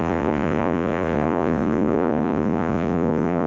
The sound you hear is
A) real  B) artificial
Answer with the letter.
B